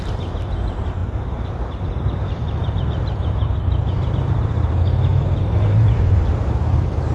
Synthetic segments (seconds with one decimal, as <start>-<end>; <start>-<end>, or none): 1.0-4.1; 5.1-7.1